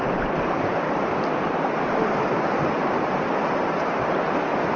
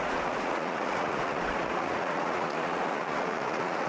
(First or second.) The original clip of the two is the first